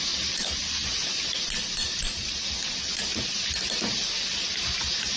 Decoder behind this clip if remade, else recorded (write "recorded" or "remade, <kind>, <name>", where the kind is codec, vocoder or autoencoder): recorded